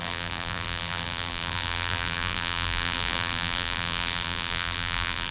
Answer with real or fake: fake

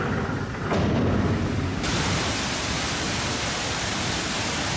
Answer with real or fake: real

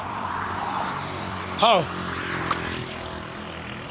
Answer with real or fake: fake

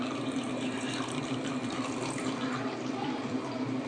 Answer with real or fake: fake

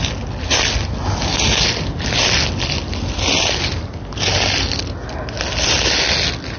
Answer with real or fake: real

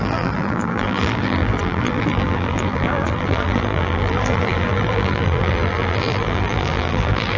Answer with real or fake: fake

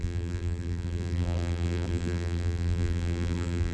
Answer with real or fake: fake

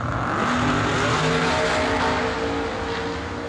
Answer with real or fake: real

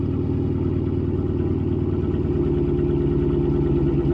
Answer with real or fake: real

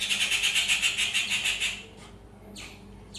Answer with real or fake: real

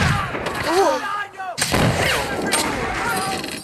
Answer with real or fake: fake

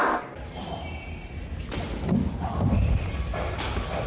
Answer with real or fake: real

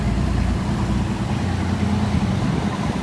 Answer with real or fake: fake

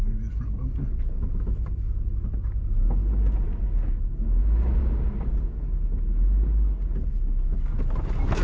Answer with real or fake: real